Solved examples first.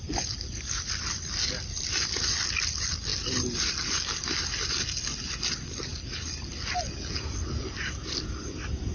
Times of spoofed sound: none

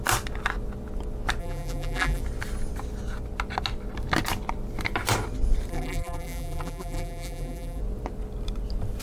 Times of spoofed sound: 1.4-2.2 (vocoder, BigVGAN v2); 5.7-7.8

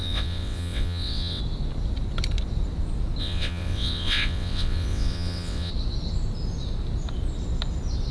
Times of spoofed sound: 0.0-1.4 (vocoder, WaveNeXt); 3.2-5.7